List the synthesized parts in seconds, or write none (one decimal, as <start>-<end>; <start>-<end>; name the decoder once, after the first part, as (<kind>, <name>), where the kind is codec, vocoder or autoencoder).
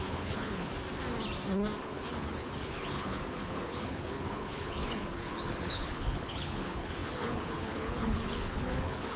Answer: 0.0-0.7 (codec, HILCodec); 1.8-9.2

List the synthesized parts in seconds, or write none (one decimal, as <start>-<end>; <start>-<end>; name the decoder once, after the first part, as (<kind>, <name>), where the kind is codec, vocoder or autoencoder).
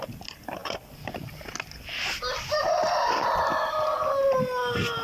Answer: none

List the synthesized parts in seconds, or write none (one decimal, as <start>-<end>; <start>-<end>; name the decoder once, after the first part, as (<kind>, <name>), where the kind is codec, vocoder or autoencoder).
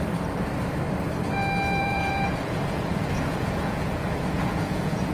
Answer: 1.8-5.1 (vocoder, Vocos)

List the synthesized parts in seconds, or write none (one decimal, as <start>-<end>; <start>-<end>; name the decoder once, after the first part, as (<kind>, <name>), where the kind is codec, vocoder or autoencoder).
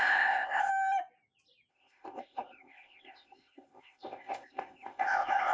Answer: 0.0-0.7 (codec, ZipCodec); 1.7-5.5